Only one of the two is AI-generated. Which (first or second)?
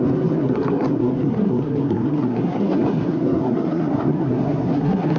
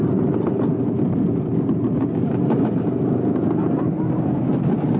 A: first